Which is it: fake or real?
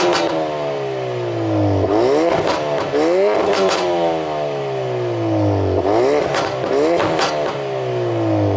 real